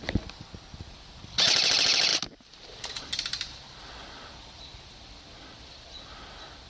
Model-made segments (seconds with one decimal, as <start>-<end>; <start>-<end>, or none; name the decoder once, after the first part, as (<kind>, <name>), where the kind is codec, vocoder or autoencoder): none